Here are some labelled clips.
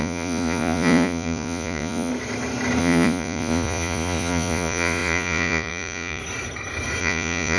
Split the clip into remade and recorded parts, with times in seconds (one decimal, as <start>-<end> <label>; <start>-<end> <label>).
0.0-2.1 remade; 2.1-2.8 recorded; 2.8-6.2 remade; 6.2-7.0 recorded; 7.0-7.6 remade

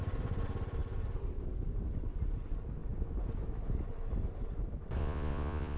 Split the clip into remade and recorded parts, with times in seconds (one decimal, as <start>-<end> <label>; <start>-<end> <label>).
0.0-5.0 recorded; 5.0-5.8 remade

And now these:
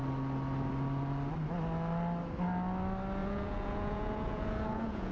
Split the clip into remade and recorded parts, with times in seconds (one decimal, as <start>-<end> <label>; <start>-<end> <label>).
0.0-3.2 recorded; 3.2-5.1 remade